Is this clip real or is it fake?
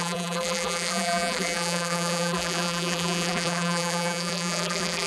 fake